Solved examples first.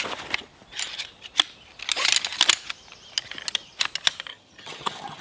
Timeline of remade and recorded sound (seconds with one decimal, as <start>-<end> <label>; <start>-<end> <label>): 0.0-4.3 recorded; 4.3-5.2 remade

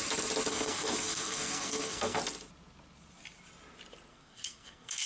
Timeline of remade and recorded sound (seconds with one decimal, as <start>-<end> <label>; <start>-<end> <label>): 0.0-0.5 recorded; 0.5-2.2 remade; 2.2-4.1 recorded; 4.1-5.1 remade

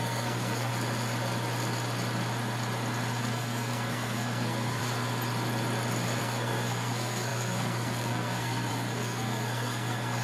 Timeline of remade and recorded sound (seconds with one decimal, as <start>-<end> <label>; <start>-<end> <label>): 0.0-0.7 remade; 0.7-3.2 recorded; 3.2-4.8 remade; 4.8-6.2 recorded; 6.2-10.2 remade

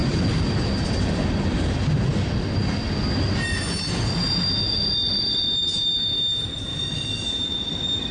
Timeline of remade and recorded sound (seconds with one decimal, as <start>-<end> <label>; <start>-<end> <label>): 0.0-8.1 recorded

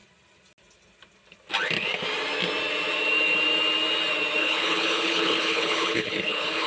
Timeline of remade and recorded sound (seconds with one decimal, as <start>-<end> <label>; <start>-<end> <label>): 0.0-4.4 recorded; 4.4-6.7 remade